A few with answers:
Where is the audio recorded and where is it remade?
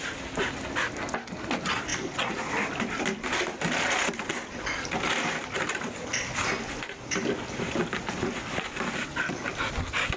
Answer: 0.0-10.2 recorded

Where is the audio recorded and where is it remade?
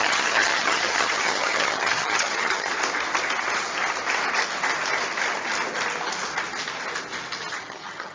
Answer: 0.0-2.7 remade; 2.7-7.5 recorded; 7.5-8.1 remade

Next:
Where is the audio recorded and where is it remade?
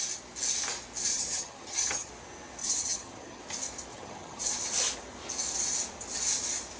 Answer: 0.0-1.1 recorded; 1.1-2.1 remade; 2.1-2.6 recorded; 2.6-3.4 remade; 3.4-3.9 recorded; 3.9-4.4 remade; 4.4-6.8 recorded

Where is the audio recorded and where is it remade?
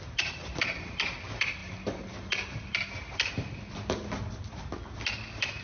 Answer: 0.0-5.6 recorded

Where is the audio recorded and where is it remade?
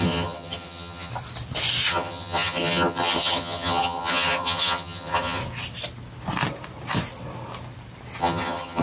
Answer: 0.0-1.1 remade; 1.1-1.9 recorded; 1.9-5.4 remade; 5.4-8.2 recorded; 8.2-8.8 remade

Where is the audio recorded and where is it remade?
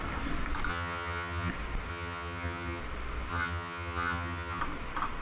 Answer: 0.0-0.7 recorded; 0.7-1.5 remade; 1.5-1.9 recorded; 1.9-2.8 remade; 2.8-3.3 recorded; 3.3-4.6 remade; 4.6-5.2 recorded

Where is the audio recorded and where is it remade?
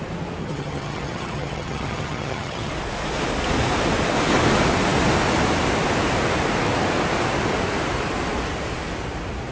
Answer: 0.0-0.4 recorded; 0.4-2.7 remade; 2.7-9.5 recorded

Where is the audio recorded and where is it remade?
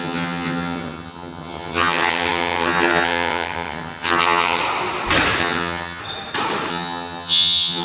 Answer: 0.0-4.6 remade; 4.6-5.4 recorded; 5.4-6.0 remade; 6.0-6.7 recorded; 6.7-7.8 remade